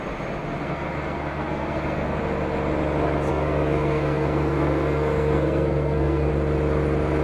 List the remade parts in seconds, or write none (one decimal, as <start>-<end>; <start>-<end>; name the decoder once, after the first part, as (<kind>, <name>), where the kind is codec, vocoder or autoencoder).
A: 0.6-2.2 (codec, SNAC); 3.3-6.3